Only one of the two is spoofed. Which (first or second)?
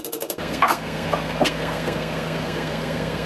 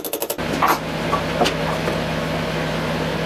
first